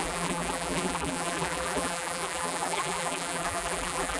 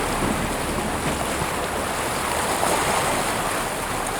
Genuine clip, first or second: second